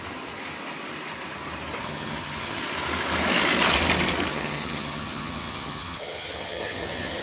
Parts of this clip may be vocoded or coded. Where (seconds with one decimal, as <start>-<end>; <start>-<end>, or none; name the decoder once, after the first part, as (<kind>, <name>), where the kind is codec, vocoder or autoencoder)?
1.8-2.6 (vocoder, HiFi-GAN); 4.3-7.2